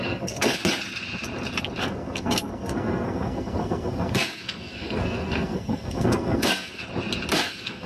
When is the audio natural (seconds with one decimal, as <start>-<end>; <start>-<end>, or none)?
0.6-1.8; 6.8-7.3